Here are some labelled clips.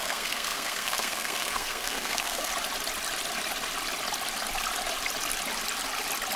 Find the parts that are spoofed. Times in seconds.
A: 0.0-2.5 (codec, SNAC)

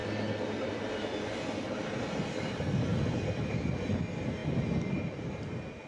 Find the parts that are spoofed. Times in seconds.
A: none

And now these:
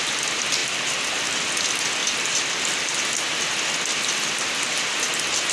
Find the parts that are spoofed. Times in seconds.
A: none

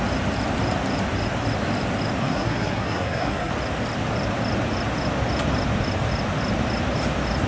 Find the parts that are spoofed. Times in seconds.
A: 2.2-3.5 (codec, SNAC)

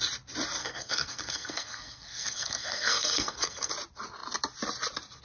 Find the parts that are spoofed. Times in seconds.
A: 0.6-3.7 (codec, SNAC)

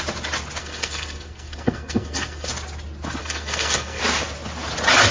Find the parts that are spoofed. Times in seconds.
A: 0.6-2.5 (codec, SNAC); 3.2-4.0

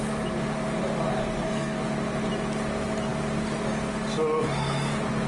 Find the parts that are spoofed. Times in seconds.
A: 1.2-1.8 (codec, SNAC)